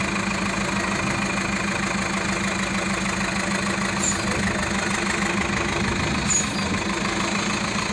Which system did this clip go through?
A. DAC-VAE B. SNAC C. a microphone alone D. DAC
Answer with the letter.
C